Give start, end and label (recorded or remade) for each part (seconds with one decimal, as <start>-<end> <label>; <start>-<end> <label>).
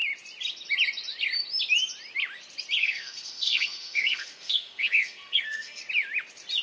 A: 0.0-2.8 recorded; 2.8-5.8 remade; 5.8-6.6 recorded